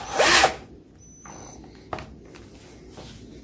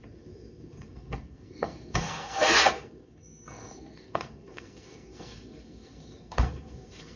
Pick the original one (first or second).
first